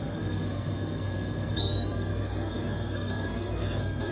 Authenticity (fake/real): fake